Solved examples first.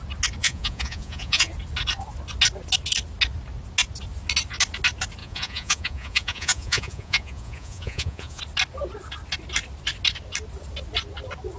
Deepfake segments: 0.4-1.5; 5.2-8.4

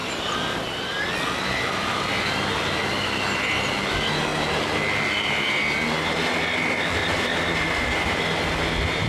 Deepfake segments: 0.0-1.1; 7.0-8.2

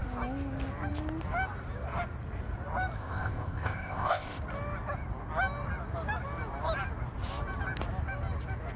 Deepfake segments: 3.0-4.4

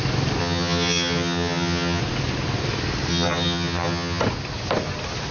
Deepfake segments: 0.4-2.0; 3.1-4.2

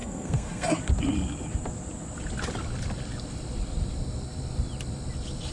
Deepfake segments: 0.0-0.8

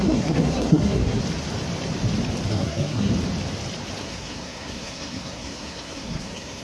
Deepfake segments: 0.0-1.2; 2.5-3.1; 4.0-6.6